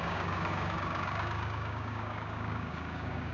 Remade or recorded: remade